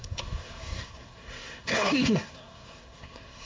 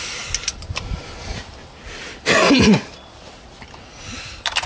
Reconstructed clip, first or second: first